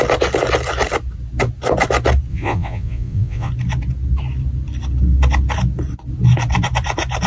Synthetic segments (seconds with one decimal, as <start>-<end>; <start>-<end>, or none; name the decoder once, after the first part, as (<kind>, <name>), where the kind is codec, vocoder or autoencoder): 2.3-3.5 (vocoder, Vocos)